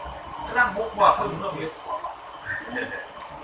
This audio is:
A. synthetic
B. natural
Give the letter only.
B